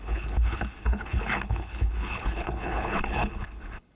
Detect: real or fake fake